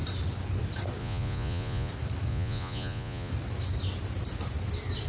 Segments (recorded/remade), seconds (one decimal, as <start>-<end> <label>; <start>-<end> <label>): 0.0-1.0 recorded; 1.0-1.9 remade; 1.9-2.3 recorded; 2.3-3.3 remade; 3.3-5.1 recorded